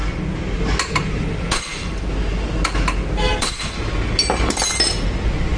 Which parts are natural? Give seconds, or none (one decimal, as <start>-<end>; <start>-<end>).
0.0-5.6